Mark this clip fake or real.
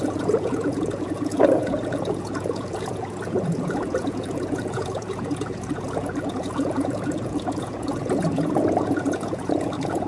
fake